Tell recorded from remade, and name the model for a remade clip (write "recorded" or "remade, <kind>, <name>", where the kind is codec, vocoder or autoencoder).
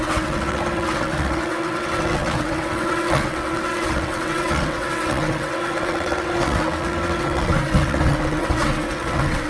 remade, vocoder, WaveNeXt